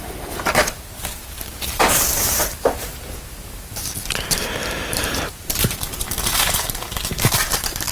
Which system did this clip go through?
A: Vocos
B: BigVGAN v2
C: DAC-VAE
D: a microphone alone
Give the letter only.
B